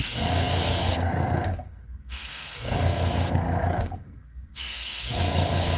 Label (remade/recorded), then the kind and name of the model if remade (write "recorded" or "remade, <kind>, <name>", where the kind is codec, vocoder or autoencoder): remade, codec, SNAC